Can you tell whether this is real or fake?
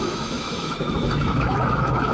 fake